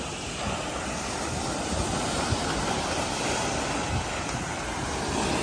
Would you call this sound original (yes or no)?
yes